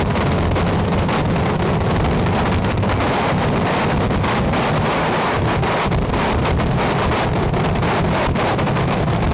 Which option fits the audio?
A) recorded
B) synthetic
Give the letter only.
B